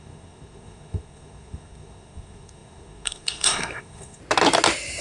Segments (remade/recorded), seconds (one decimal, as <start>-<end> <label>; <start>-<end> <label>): 0.0-4.2 remade; 4.2-5.0 recorded